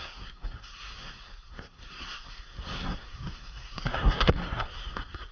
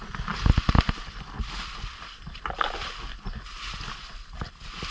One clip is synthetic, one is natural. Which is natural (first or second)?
second